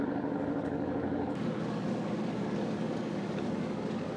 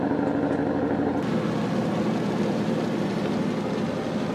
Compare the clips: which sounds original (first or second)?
second